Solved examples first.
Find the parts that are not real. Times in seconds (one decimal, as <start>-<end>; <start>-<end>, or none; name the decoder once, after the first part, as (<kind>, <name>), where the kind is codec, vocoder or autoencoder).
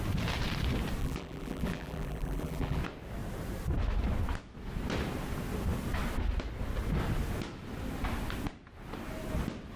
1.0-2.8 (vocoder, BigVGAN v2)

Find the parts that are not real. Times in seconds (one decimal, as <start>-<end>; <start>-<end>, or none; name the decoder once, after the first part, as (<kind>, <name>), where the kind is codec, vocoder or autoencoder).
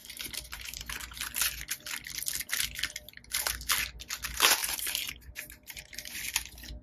0.0-0.9 (vocoder, BigVGAN v2); 4.6-6.2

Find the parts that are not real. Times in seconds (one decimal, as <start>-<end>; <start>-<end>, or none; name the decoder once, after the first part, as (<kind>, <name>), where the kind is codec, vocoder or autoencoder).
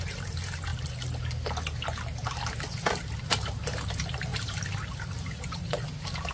0.0-0.7 (vocoder, BigVGAN v2); 3.2-4.3; 4.9-6.3